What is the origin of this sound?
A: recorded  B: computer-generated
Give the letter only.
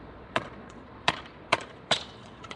B